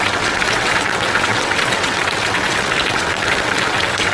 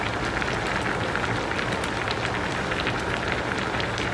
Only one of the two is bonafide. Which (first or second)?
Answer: second